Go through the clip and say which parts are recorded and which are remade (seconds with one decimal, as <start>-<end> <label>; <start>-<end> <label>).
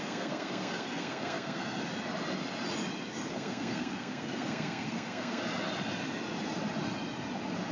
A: 0.0-1.8 remade; 1.8-3.3 recorded; 3.3-5.4 remade; 5.4-7.7 recorded